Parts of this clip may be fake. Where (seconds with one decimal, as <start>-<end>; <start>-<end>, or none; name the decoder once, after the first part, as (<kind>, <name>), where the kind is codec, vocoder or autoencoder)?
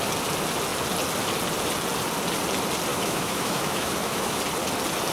2.9-4.4 (autoencoder, DAC-VAE)